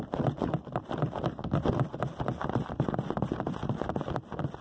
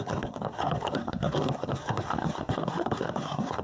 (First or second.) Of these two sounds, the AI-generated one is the second